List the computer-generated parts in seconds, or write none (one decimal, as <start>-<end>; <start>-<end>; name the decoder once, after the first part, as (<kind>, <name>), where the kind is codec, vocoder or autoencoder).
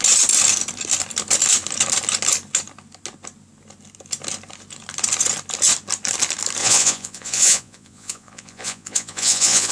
6.6-9.7 (vocoder, Vocos)